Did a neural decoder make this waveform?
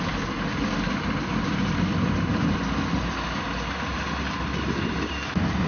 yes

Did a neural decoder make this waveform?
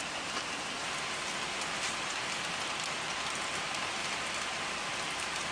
no